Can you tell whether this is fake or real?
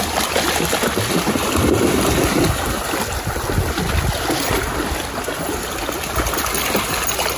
real